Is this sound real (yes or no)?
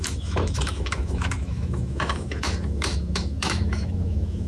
no